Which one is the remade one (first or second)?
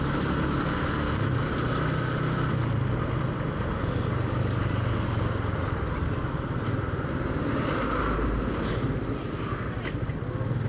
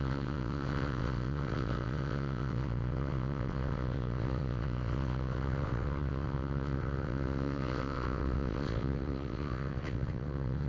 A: second